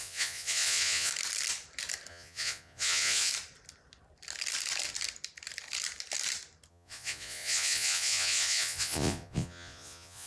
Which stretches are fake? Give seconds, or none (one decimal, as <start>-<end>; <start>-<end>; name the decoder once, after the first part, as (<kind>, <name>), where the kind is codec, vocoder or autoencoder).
0.0-1.1 (vocoder, Vocos); 2.1-3.3; 6.7-10.3